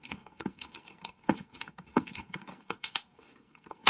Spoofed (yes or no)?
yes